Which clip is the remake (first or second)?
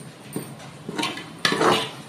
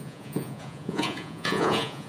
second